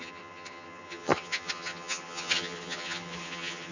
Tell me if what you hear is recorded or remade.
remade